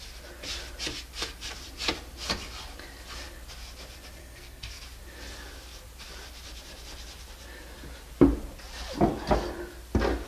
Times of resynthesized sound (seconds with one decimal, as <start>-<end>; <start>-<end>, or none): 4.2-4.8